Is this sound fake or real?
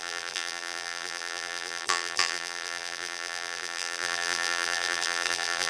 fake